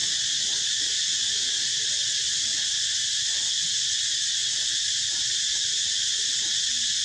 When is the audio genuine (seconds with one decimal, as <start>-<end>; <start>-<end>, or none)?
0.0-2.5; 3.1-7.0